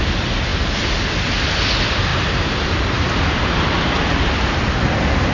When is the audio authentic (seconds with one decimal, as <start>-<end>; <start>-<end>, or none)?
0.0-5.3